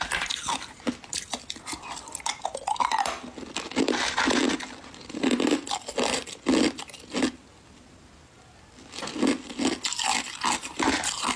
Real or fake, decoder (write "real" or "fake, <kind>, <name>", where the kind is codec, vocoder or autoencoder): real